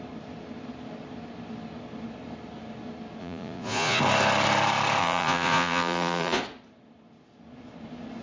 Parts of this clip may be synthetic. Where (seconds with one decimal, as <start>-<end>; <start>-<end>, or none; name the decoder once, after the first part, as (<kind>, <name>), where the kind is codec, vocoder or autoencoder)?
3.2-4.0 (vocoder, Vocos); 5.0-6.4